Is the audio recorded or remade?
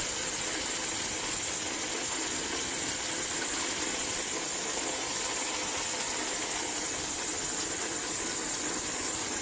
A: recorded